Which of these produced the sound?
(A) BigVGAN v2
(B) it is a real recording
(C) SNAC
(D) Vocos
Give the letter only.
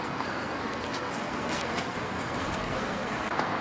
C